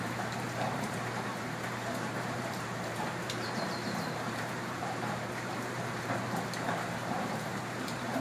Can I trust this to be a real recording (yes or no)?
no